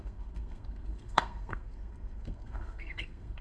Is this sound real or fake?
fake